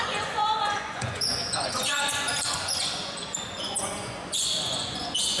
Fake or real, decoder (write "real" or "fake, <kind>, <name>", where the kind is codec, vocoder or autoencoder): fake, vocoder, Vocos